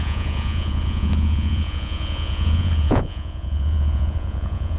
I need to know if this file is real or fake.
fake